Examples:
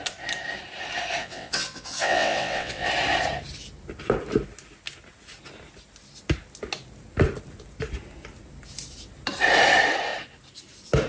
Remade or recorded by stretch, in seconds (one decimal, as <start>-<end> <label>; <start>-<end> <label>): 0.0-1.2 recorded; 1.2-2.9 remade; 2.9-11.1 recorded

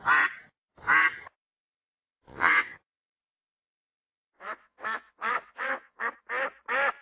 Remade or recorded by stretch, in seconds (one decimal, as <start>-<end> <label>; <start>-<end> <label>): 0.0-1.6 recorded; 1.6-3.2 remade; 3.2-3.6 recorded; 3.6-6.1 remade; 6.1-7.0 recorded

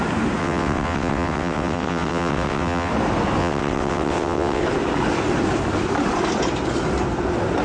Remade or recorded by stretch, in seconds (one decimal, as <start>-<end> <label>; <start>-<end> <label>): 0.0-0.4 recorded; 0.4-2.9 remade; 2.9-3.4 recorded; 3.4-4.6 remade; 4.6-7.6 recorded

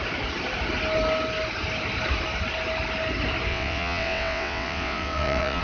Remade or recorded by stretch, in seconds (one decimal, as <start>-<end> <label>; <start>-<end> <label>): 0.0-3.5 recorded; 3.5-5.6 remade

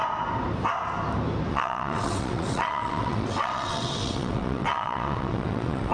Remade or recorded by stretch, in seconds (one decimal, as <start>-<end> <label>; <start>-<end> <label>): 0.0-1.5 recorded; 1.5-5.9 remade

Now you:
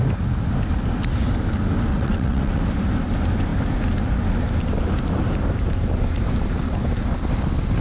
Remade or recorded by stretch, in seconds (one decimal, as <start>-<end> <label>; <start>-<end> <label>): 0.0-1.9 recorded; 1.9-2.6 remade; 2.6-7.8 recorded